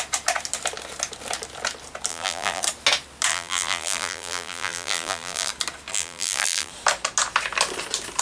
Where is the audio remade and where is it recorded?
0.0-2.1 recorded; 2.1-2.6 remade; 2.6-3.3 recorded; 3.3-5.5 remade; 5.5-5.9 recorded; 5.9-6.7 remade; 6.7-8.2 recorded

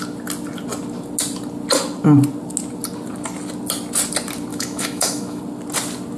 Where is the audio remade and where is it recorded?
0.0-4.5 recorded; 4.5-5.4 remade; 5.4-6.2 recorded